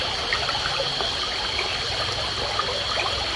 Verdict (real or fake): real